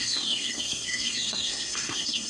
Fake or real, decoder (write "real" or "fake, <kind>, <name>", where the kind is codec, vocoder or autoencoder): fake, codec, SNAC